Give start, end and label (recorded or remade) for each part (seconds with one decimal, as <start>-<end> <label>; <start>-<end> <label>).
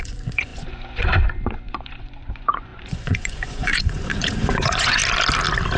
0.0-5.0 remade; 5.0-5.8 recorded